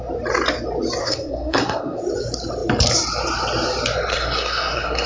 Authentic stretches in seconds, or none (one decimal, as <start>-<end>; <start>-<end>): 0.0-1.0; 2.0-4.1